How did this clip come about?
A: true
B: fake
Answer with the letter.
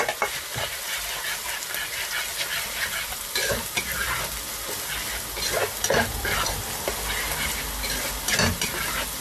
A